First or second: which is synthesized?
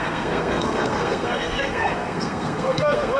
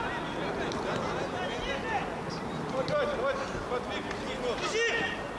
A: first